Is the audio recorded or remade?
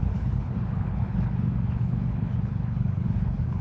remade